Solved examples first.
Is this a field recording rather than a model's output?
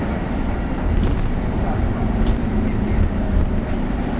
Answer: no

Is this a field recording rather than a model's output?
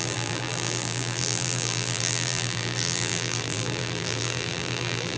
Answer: no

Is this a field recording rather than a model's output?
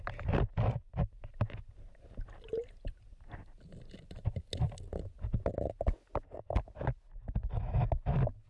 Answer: yes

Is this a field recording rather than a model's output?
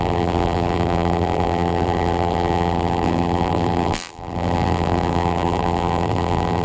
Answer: no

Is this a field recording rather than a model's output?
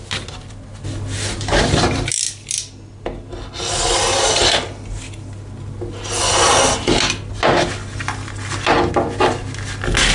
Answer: yes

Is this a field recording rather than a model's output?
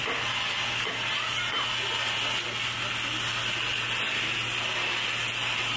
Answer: yes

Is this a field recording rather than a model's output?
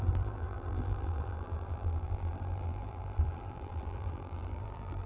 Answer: no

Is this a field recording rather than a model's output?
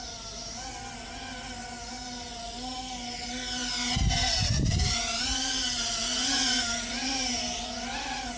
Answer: yes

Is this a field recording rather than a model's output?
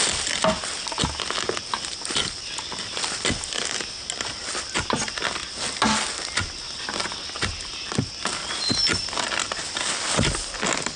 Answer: yes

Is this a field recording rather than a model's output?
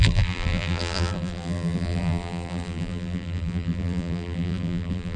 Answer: no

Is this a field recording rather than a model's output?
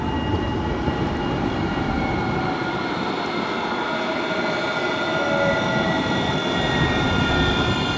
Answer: yes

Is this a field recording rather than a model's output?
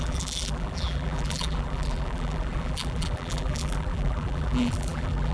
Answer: no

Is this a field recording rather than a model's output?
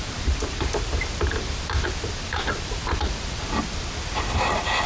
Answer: no